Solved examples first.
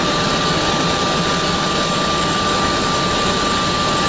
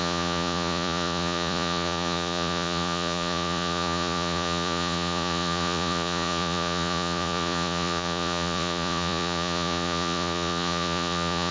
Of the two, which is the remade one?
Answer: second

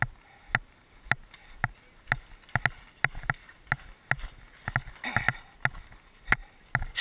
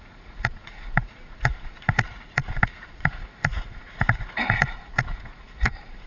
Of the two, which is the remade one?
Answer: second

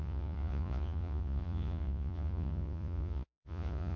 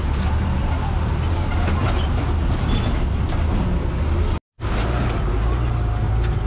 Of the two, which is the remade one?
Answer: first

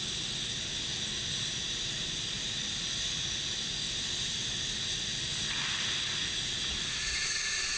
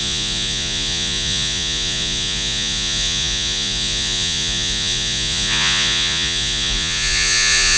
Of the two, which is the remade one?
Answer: second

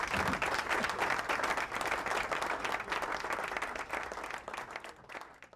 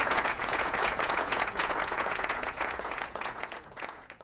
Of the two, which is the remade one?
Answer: second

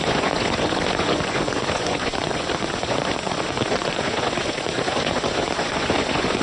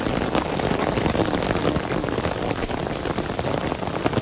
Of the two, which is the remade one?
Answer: first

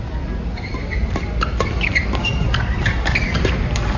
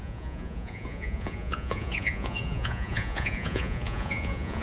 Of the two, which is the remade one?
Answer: second